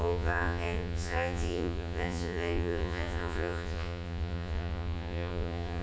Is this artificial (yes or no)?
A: yes